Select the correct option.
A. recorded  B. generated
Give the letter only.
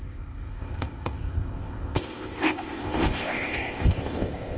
B